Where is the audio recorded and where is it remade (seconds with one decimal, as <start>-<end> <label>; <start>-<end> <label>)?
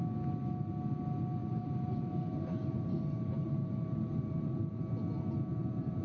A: 0.0-1.4 recorded; 1.4-4.8 remade; 4.8-5.5 recorded; 5.5-6.0 remade